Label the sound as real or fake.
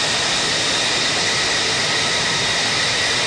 real